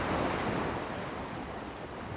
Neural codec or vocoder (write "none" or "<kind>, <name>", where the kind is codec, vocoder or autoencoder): none